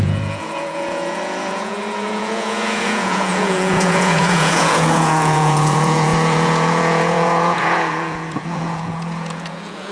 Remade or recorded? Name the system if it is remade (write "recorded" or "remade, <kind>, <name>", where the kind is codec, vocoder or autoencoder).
remade, vocoder, Vocos